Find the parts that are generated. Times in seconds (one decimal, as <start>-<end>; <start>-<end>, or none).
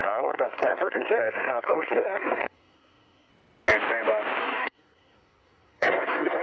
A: 0.0-3.3; 4.4-6.4